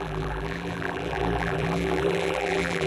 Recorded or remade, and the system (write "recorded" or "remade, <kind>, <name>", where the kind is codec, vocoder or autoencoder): remade, vocoder, BigVGAN v2